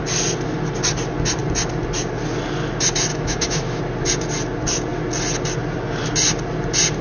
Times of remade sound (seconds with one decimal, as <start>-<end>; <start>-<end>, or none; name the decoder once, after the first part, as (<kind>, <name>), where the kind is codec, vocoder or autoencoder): 3.1-3.8 (autoencoder, DAC-VAE)